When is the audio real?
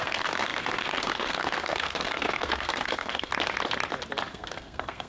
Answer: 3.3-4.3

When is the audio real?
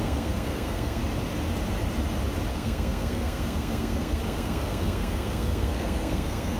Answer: 1.0-2.5